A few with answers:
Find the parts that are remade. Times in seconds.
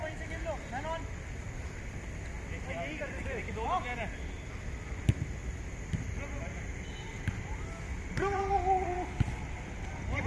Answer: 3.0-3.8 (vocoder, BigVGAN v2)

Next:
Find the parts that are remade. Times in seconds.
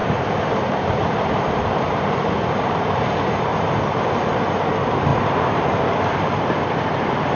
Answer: 0.0-3.0 (vocoder, BigVGAN v2); 3.5-4.2; 5.1-6.2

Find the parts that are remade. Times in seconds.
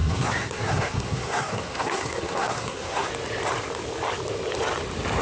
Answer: 0.0-3.1 (codec, SNAC)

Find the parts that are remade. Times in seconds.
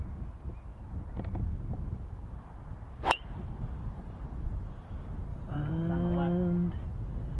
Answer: 5.3-5.9 (vocoder, BigVGAN v2)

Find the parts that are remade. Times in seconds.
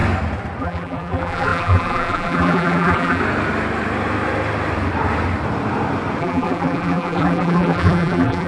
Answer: 0.6-3.2 (vocoder, BigVGAN v2); 6.2-8.5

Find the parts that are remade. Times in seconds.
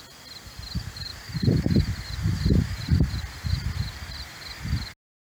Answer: 1.1-4.3 (vocoder, BigVGAN v2)